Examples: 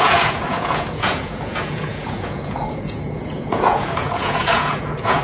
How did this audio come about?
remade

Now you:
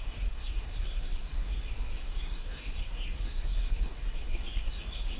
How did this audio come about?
remade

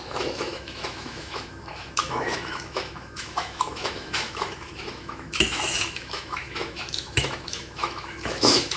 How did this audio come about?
remade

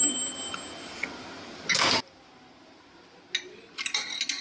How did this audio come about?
recorded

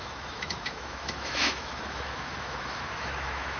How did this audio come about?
remade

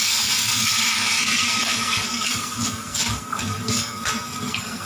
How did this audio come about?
remade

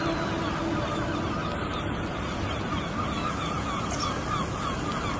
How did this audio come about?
recorded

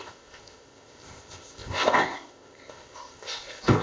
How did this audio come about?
remade